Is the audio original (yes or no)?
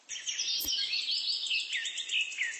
yes